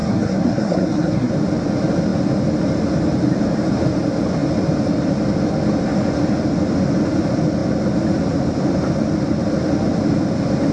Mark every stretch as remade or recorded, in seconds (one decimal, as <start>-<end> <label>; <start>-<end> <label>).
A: 0.0-1.3 remade; 1.3-10.7 recorded